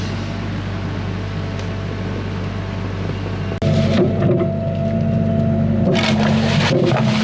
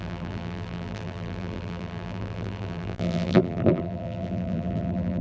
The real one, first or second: first